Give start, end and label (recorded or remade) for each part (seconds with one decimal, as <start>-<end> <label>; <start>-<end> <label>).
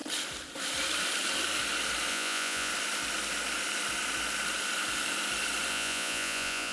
0.0-2.1 recorded; 2.1-2.7 remade; 2.7-5.7 recorded; 5.7-6.7 remade